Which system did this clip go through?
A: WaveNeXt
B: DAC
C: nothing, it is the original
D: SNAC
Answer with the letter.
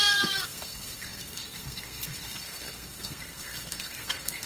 D